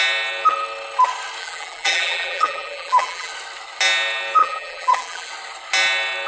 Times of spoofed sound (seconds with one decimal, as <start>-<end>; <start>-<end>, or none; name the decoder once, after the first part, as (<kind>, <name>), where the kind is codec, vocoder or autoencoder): 1.4-3.3 (vocoder, BigVGAN v2); 4.4-5.3